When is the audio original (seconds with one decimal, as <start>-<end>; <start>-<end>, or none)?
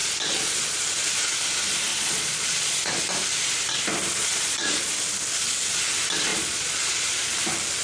0.9-1.9; 3.0-4.2; 4.9-6.3; 7.3-7.8